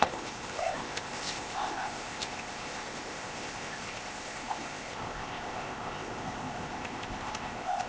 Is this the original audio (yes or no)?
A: no